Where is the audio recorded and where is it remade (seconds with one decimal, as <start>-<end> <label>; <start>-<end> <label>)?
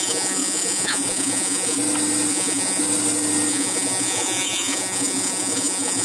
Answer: 0.0-1.8 remade; 1.8-2.3 recorded; 2.3-2.8 remade; 2.8-3.5 recorded; 3.5-6.0 remade